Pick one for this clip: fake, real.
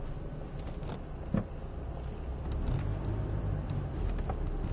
real